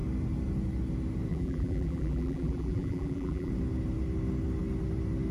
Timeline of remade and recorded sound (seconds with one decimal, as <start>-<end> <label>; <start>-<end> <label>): 0.0-1.3 recorded; 1.3-3.5 remade; 3.5-5.3 recorded